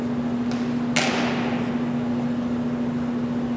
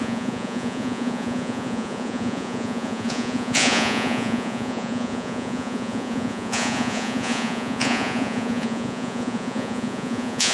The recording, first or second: first